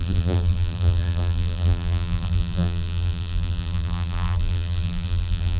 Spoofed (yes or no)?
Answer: yes